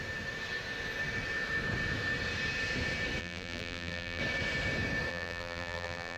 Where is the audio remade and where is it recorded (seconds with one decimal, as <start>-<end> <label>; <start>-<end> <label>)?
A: 0.0-3.2 recorded; 3.2-4.2 remade; 4.2-5.1 recorded; 5.1-6.2 remade